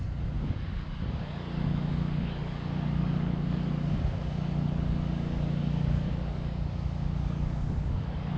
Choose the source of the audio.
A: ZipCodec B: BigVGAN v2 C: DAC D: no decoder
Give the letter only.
C